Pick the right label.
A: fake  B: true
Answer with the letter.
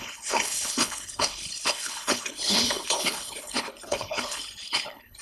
A